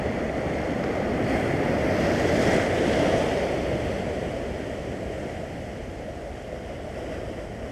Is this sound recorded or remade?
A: recorded